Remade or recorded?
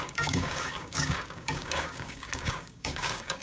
remade